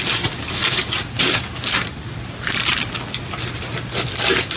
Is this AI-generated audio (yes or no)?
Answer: no